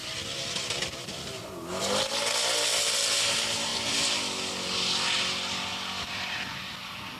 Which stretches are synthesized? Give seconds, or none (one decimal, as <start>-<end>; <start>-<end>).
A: none